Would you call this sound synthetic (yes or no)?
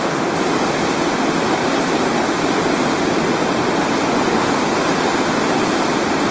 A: no